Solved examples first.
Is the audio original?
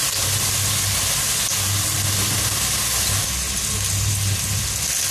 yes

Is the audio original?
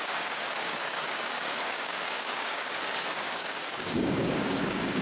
no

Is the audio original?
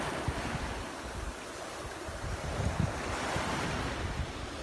yes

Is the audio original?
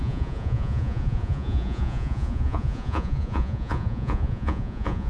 no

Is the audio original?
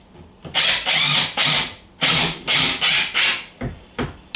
yes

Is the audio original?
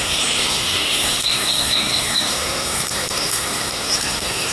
no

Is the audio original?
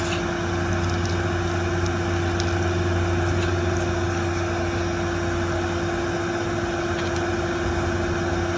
yes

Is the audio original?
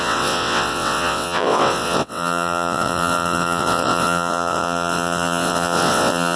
no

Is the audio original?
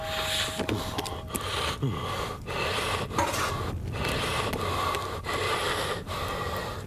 yes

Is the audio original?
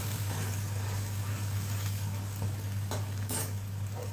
no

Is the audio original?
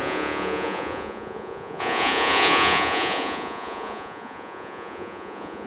no